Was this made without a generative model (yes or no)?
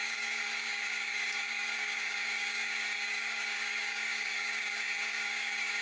no